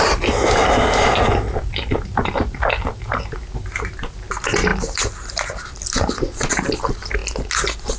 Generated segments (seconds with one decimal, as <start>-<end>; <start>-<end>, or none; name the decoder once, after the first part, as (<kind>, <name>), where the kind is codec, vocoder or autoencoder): none